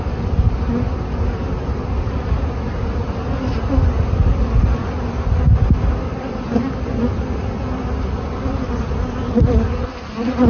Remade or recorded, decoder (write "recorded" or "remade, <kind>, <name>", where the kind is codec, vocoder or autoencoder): recorded